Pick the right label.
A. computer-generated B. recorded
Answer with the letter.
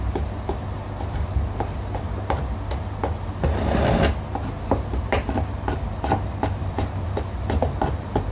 B